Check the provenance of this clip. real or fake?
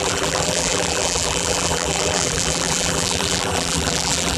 fake